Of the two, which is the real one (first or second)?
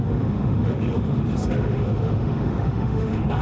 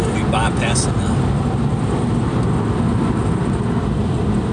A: second